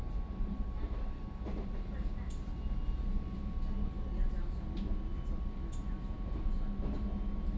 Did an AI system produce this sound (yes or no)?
no